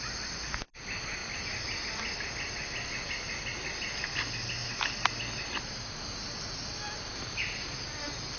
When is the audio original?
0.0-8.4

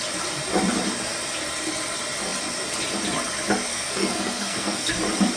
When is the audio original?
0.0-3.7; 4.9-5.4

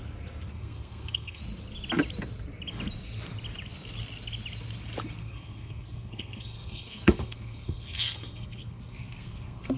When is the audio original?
0.0-0.5; 1.4-5.2